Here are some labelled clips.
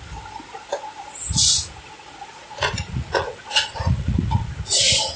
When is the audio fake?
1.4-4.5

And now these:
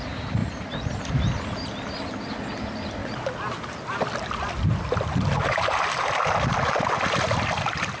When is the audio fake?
0.4-1.0

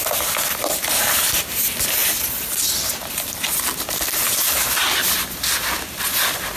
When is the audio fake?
none

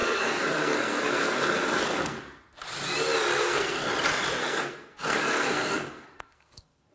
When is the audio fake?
0.0-2.4; 3.4-3.9; 4.4-6.9

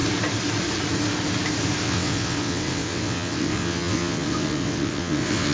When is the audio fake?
1.8-5.5

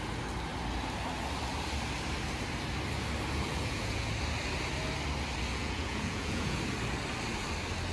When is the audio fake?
3.5-4.1; 5.5-6.6